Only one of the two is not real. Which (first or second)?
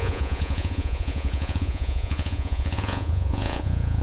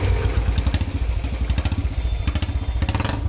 first